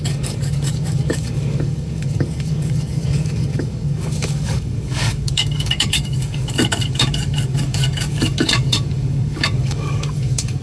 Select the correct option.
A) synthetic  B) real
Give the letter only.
A